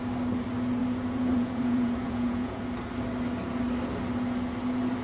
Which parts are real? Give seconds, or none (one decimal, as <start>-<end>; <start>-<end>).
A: 0.0-0.8; 2.6-5.0

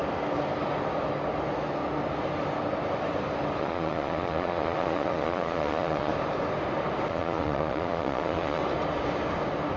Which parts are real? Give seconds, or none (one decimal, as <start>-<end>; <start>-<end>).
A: 0.0-3.6; 6.1-7.1; 8.6-9.8

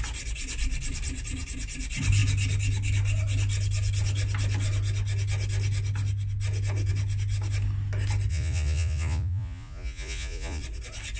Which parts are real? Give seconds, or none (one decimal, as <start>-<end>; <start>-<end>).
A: 0.0-8.3; 10.6-11.2

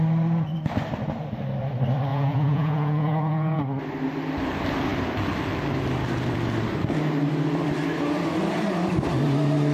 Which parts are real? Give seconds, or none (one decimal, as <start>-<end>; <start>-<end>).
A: 0.0-2.1; 3.6-9.7

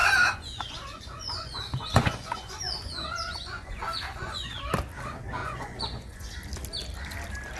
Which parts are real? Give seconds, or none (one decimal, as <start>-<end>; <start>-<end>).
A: 4.6-5.4; 6.3-7.6

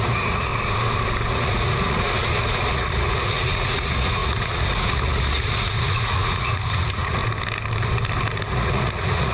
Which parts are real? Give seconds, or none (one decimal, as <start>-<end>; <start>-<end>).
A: 0.5-1.3; 7.2-8.5